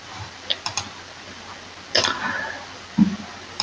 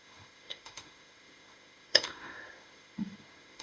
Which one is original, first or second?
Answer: first